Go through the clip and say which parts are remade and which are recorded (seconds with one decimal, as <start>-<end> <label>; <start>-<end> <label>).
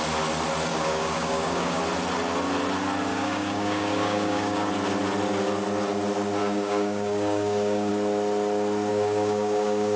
0.0-0.7 recorded; 0.7-1.8 remade; 1.8-3.1 recorded; 3.1-4.7 remade; 4.7-6.4 recorded; 6.4-7.9 remade; 7.9-8.9 recorded; 8.9-10.0 remade